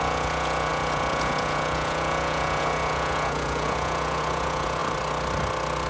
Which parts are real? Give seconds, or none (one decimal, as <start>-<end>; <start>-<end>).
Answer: 4.8-5.9